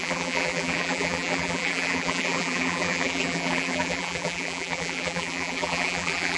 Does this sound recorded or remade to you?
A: remade